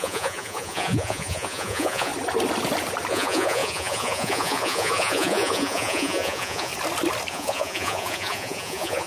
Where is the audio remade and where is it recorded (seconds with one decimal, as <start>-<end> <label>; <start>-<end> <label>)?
0.0-2.1 remade; 2.1-3.1 recorded; 3.1-6.7 remade; 6.7-7.3 recorded; 7.3-9.1 remade